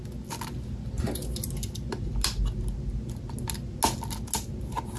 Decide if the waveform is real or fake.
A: real